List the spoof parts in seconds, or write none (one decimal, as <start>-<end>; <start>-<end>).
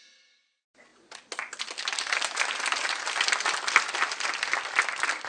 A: none